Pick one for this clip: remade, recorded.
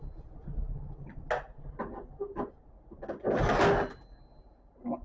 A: recorded